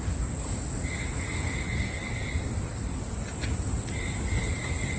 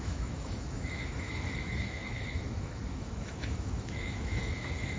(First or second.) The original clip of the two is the first